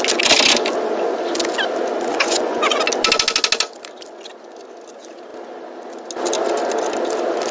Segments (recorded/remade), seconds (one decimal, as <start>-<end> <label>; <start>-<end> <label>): 0.0-2.1 recorded; 2.1-2.8 remade; 2.8-7.5 recorded